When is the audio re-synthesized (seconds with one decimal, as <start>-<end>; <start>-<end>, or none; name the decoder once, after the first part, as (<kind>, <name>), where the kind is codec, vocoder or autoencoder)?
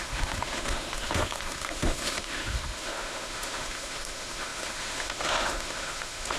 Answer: 0.0-6.4 (autoencoder, DAC-VAE)